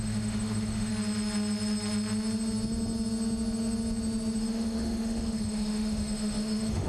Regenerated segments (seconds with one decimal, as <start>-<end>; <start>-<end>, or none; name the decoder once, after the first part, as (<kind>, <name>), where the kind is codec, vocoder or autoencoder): 0.0-0.9 (autoencoder, DAC-VAE); 4.4-6.9